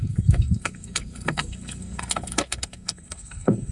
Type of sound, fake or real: fake